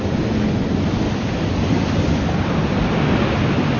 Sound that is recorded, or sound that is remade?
recorded